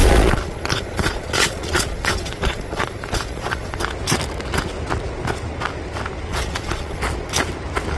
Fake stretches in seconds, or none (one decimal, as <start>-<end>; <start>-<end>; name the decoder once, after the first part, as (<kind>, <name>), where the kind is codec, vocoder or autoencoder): 0.0-3.8 (vocoder, Vocos); 6.3-7.0